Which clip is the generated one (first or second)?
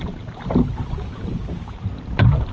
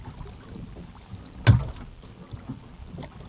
first